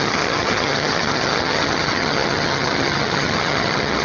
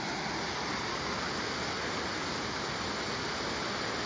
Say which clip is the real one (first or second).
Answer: second